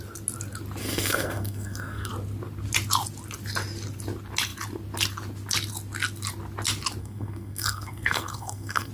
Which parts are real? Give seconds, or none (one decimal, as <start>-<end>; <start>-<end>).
0.0-0.8; 2.1-7.0